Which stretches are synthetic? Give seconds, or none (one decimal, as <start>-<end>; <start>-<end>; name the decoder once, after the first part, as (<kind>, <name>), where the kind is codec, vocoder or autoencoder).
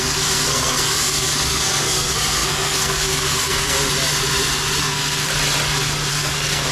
0.0-3.8 (codec, SNAC); 4.8-5.3; 6.1-6.7